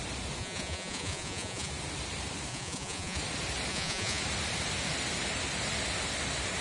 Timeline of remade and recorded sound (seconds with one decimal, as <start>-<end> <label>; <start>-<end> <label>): 0.0-0.4 recorded; 0.4-1.7 remade; 1.7-2.5 recorded; 2.5-3.2 remade; 3.2-3.7 recorded; 3.7-4.2 remade; 4.2-6.6 recorded